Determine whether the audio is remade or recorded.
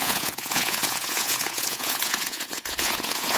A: remade